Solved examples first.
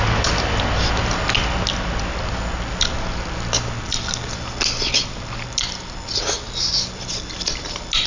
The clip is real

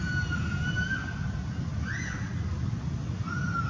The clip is real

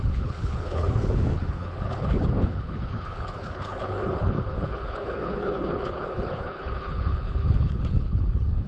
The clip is fake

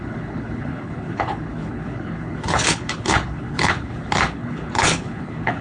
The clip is fake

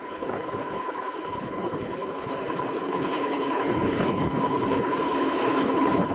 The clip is fake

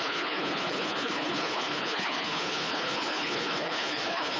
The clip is fake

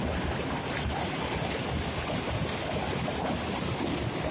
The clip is real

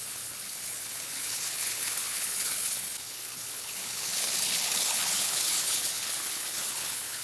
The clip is fake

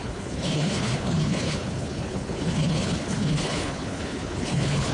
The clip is fake